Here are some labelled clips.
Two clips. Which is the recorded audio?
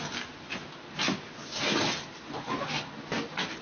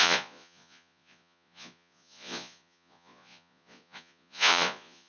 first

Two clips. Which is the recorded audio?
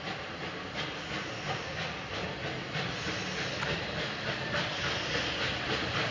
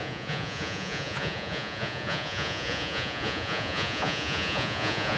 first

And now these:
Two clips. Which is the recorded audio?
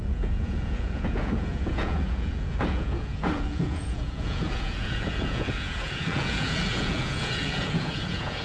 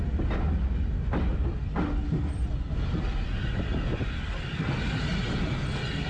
second